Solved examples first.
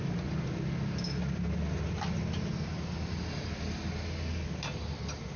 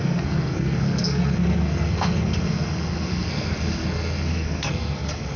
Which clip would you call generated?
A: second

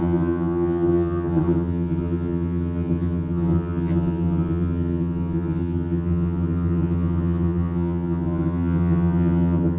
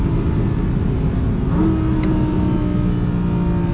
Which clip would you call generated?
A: first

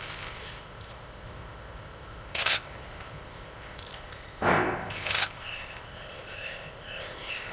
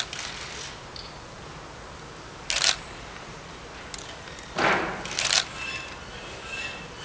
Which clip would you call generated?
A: first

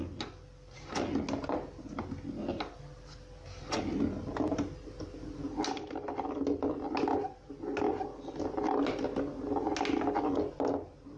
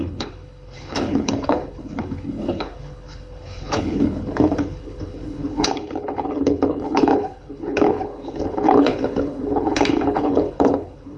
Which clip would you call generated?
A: second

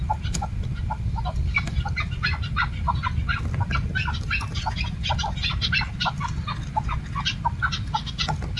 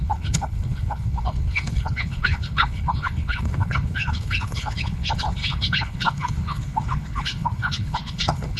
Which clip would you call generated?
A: second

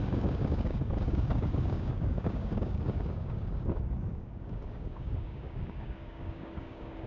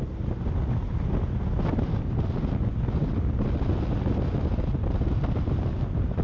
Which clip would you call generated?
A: first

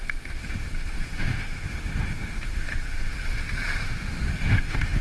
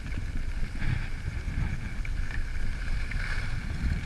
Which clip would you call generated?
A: first